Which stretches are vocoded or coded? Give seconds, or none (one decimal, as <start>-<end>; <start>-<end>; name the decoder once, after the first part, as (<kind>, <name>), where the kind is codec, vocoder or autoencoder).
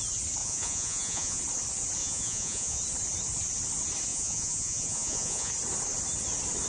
0.4-1.4 (vocoder, Vocos); 2.0-2.8; 4.1-5.5